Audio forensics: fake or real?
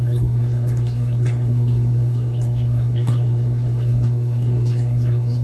fake